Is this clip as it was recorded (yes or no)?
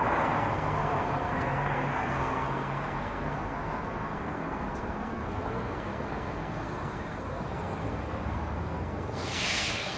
no